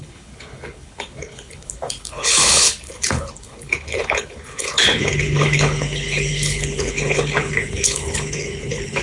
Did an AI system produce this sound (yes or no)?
yes